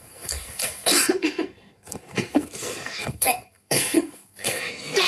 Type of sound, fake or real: fake